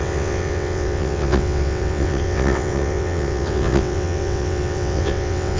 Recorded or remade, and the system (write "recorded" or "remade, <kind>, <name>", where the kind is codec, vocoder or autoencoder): remade, vocoder, WaveNeXt